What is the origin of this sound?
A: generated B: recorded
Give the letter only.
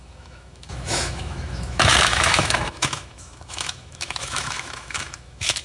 A